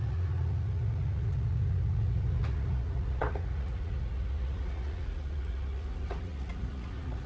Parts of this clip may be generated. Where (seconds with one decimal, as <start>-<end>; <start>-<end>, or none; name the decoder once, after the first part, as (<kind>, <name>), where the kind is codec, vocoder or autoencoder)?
0.0-7.3 (vocoder, Vocos)